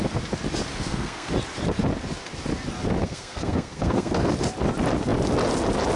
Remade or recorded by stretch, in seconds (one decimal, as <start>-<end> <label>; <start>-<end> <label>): 0.0-0.7 recorded; 0.7-1.3 remade; 1.3-3.0 recorded; 3.0-4.3 remade; 4.3-6.0 recorded